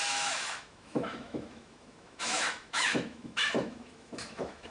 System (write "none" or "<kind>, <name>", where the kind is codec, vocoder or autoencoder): autoencoder, DAC-VAE